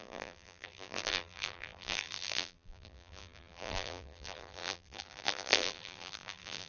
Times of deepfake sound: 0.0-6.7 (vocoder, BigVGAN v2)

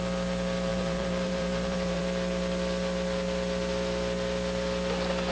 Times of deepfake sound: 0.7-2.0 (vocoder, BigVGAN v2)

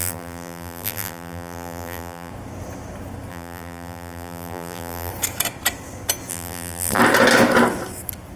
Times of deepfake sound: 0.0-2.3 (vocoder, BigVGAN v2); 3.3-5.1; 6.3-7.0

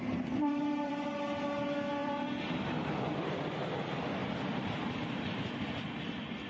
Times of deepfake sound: 0.0-0.9 (vocoder, BigVGAN v2); 2.0-3.5; 4.2-4.9

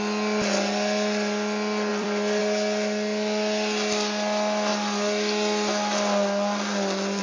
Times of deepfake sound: 1.9-2.4 (vocoder, BigVGAN v2)

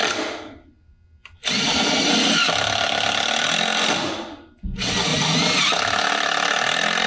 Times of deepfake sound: 5.1-6.1 (vocoder, BigVGAN v2)

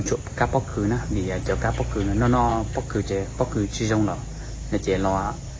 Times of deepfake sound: 2.5-3.1 (vocoder, BigVGAN v2)

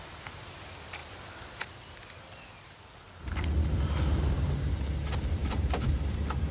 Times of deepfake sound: 5.4-6.0 (vocoder, BigVGAN v2)